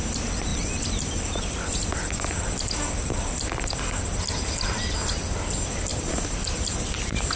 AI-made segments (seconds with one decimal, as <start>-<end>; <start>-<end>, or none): 0.5-4.9; 5.9-6.4